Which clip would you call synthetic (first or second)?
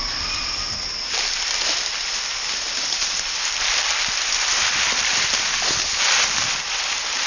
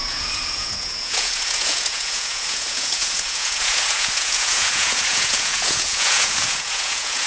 second